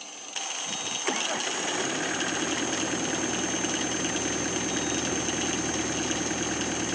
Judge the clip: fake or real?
real